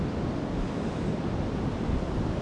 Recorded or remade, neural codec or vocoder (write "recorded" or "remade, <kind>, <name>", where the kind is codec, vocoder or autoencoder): remade, vocoder, BigVGAN v2